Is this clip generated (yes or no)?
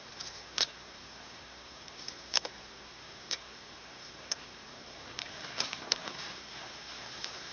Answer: yes